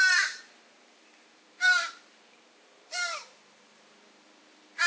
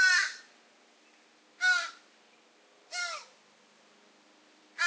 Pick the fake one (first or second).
first